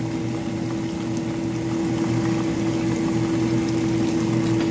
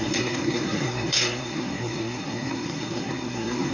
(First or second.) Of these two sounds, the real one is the first